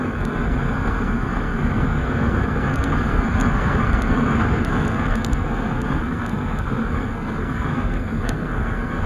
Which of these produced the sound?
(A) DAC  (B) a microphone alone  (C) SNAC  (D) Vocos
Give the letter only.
C